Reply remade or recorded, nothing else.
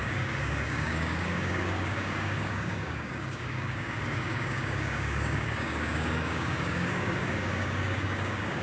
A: remade